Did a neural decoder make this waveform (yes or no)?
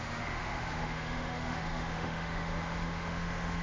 yes